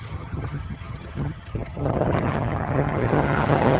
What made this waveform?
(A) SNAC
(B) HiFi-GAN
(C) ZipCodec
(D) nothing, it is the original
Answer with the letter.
B